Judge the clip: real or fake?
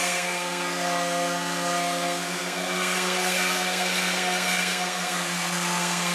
fake